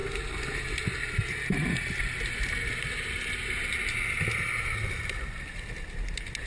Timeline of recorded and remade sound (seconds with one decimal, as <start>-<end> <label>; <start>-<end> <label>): 0.0-6.5 recorded